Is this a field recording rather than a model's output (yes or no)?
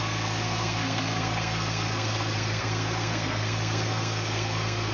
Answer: no